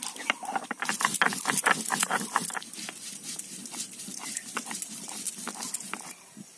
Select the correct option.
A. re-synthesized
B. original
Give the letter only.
B